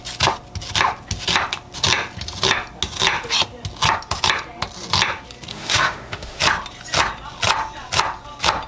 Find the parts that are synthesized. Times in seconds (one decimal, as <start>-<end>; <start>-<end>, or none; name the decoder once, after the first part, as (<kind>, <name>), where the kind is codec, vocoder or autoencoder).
5.5-6.4 (autoencoder, DAC-VAE)